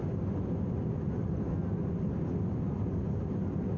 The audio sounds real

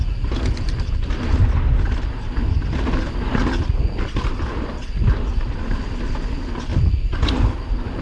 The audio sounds real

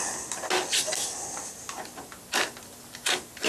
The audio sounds real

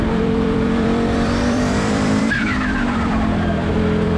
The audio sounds fake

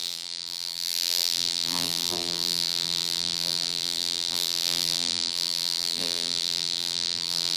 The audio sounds fake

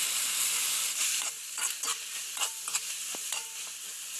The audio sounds real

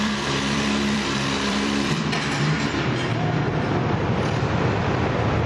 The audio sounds fake